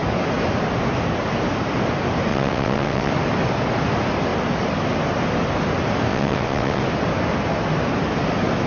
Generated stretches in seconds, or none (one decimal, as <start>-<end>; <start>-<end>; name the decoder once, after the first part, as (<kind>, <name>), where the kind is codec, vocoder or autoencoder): 2.3-3.1 (vocoder, WaveNeXt); 6.1-6.8